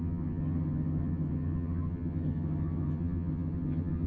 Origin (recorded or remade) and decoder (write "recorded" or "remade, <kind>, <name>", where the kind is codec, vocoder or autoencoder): remade, vocoder, HiFi-GAN